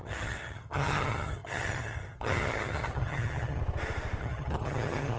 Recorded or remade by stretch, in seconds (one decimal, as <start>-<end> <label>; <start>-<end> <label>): 0.0-3.6 remade; 3.6-4.2 recorded; 4.2-5.2 remade